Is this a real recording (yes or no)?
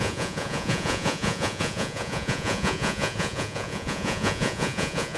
no